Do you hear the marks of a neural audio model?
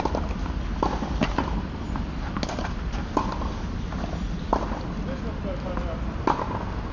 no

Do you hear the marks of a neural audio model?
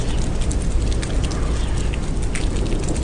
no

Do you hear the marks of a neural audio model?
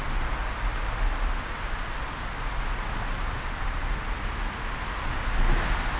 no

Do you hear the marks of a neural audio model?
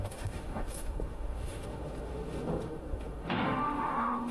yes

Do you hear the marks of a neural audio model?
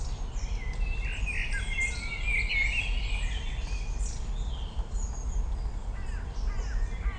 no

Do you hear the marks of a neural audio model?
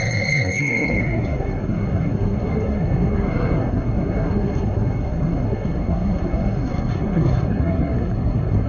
yes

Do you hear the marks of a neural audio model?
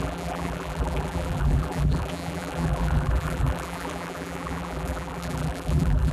yes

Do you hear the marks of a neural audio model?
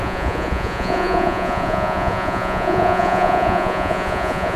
yes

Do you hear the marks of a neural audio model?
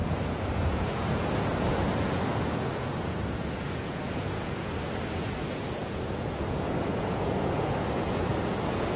yes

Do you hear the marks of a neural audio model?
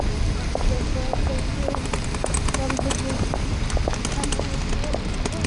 no